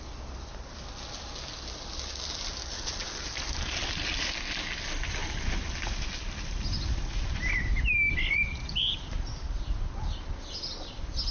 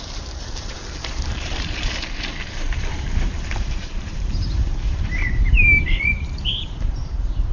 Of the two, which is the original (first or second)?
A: first